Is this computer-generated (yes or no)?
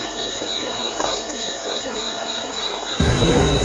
yes